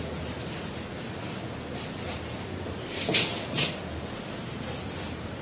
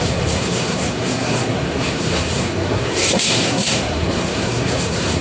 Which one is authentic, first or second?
first